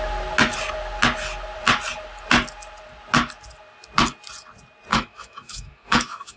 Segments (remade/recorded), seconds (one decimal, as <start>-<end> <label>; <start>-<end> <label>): 0.0-4.9 recorded; 4.9-6.4 remade